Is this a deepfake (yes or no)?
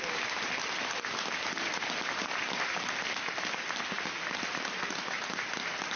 no